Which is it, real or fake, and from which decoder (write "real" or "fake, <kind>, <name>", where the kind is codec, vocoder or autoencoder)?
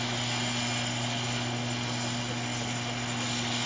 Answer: real